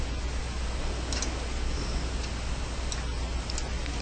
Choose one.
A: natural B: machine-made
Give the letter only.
A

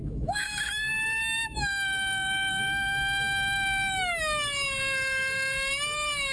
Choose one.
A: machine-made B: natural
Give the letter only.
A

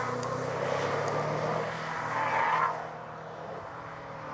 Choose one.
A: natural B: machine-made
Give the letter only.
A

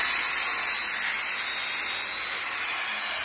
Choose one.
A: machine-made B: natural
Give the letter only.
B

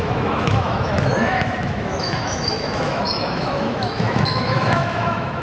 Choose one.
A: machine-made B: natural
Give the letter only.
A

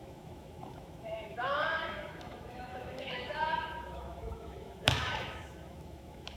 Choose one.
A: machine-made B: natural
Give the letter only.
A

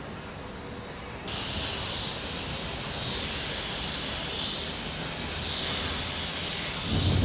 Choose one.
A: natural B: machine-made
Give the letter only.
A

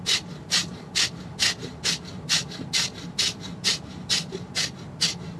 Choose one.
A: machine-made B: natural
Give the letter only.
B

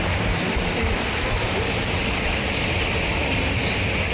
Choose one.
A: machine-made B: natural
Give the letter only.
B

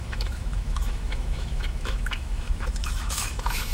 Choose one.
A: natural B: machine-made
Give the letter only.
B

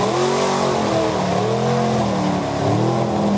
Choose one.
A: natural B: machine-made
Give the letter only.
A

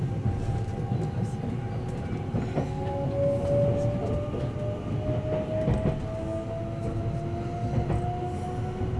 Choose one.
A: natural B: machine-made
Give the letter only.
A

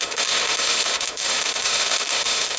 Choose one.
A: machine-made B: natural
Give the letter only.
A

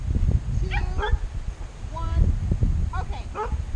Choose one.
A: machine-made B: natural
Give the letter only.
B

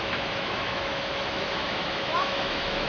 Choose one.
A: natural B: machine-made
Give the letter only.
B